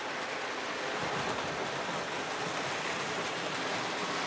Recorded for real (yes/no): yes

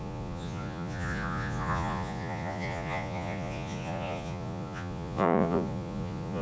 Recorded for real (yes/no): no